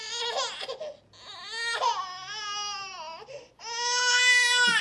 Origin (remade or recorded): recorded